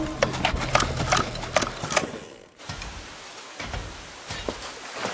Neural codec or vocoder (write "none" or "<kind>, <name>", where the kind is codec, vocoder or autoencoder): none